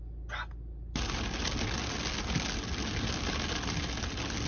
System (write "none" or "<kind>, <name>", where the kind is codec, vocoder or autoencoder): none